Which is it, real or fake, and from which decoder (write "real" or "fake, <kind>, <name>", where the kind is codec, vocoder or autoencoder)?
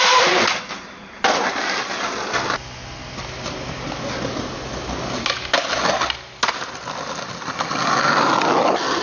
real